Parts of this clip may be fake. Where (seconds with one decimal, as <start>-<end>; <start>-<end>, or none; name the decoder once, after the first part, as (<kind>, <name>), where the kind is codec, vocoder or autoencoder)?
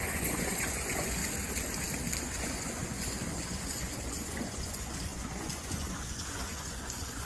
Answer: 0.0-1.2 (vocoder, Vocos); 2.2-7.3